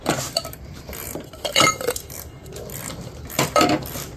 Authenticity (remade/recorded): remade